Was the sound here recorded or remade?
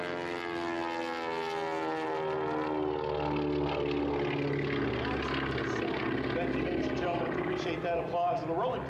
recorded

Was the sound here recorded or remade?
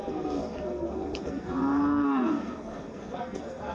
remade